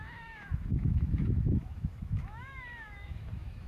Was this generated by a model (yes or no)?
yes